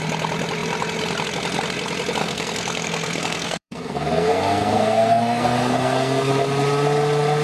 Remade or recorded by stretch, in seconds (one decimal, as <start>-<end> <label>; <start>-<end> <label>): 0.0-2.2 recorded; 2.2-6.3 remade; 6.3-7.4 recorded